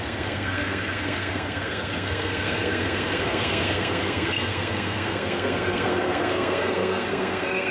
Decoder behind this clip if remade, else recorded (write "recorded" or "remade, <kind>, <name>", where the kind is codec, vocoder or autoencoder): remade, codec, SNAC